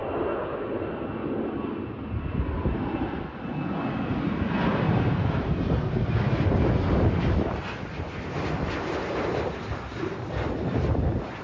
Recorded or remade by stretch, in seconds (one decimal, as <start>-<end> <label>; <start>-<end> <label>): 0.0-4.7 recorded; 4.7-5.7 remade; 5.7-11.4 recorded